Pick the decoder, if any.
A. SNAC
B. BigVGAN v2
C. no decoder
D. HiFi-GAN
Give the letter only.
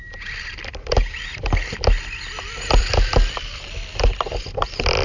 B